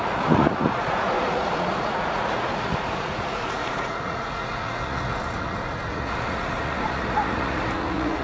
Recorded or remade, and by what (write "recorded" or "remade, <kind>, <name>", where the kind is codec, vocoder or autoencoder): remade, vocoder, Vocos